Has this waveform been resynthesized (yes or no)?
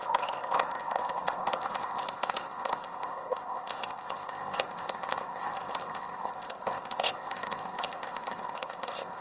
yes